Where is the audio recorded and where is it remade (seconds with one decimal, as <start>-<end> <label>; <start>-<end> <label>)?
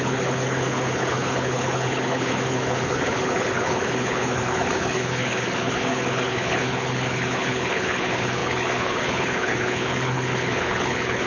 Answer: 0.0-11.3 remade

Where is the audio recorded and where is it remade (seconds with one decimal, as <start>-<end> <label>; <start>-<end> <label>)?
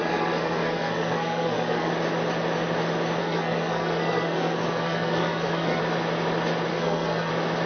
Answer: 0.0-1.9 remade; 1.9-3.2 recorded; 3.2-5.8 remade; 5.8-6.7 recorded; 6.7-7.3 remade; 7.3-7.7 recorded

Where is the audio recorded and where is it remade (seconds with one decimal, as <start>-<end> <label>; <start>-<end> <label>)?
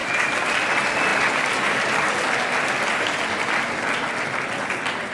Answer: 0.0-5.1 recorded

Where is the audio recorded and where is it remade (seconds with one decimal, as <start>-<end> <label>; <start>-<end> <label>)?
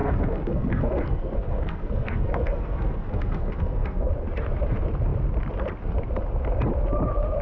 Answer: 0.0-4.1 remade; 4.1-7.4 recorded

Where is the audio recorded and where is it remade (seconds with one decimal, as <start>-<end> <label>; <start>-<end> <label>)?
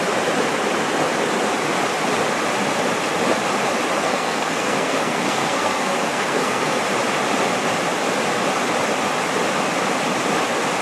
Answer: 0.0-4.0 recorded; 4.0-6.8 remade; 6.8-10.8 recorded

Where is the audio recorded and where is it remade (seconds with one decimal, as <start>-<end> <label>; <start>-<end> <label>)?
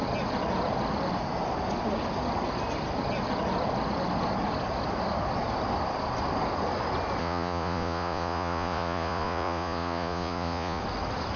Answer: 0.0-7.2 recorded; 7.2-10.8 remade; 10.8-11.4 recorded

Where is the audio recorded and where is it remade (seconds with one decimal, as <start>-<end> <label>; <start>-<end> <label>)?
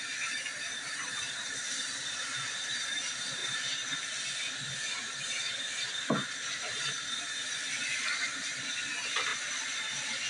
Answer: 0.0-10.3 recorded